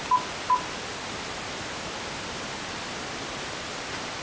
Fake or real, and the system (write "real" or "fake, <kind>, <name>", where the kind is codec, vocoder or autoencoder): real